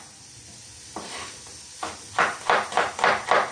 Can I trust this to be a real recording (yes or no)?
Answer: yes